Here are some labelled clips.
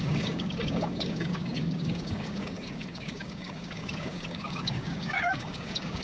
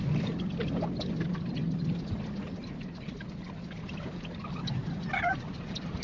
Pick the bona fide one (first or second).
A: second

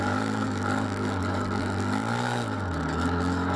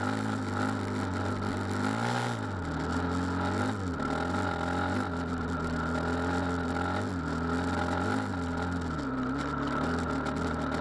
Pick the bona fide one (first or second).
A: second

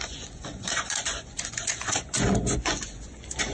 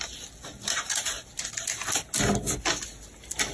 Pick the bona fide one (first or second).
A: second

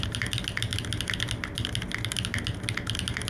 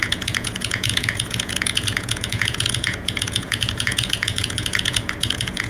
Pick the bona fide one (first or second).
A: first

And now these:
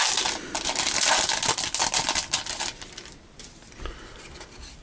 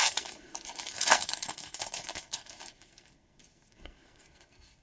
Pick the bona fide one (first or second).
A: first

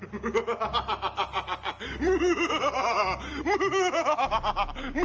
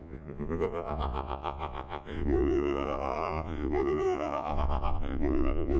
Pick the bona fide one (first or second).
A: first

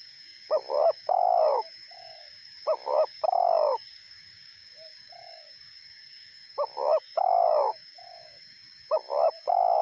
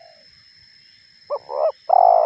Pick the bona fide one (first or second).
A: second